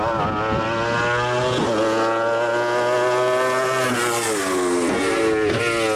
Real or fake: real